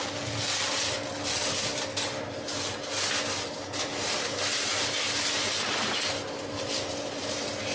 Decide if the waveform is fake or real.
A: real